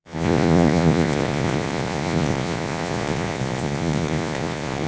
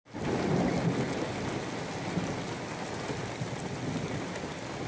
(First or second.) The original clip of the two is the second